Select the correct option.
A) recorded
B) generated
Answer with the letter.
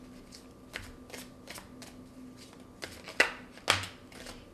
A